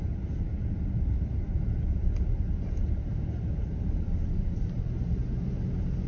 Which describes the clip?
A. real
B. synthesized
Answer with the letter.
A